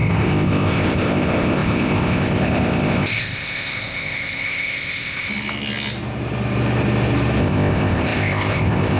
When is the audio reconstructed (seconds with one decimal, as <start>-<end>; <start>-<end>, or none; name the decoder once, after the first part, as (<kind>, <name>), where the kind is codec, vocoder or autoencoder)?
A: 0.0-5.3 (codec, ZipCodec); 7.4-9.0